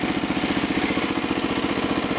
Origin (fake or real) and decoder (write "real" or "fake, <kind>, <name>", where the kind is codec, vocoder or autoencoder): real